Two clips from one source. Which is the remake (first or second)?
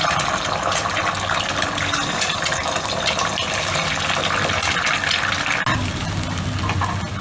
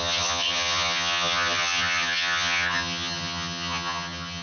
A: second